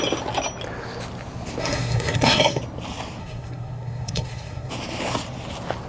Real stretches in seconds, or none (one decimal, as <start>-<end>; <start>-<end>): 0.0-1.6; 2.6-3.2; 4.7-5.9